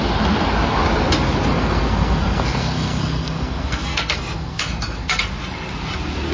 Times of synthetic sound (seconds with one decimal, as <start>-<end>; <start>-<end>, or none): 1.5-5.2

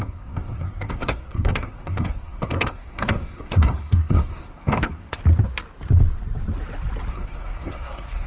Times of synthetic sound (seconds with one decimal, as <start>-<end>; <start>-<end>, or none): 0.0-5.2; 7.1-8.3

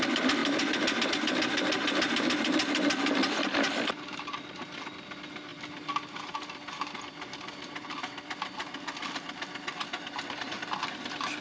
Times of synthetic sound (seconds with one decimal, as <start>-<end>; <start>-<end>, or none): none

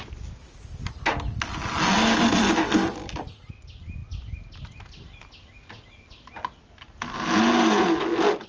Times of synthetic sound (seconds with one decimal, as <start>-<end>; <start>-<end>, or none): none

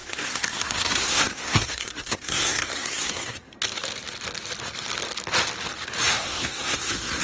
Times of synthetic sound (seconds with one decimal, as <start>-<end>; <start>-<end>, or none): 0.0-3.5; 6.1-7.2

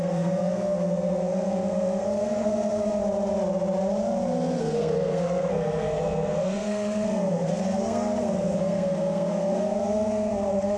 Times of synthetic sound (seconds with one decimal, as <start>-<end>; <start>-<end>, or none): 0.0-3.0; 4.6-10.8